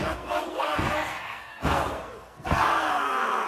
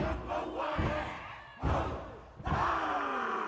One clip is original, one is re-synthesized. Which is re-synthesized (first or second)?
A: first